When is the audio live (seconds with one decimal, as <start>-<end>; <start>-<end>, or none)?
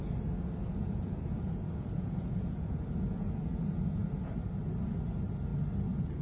0.0-0.6; 4.3-6.2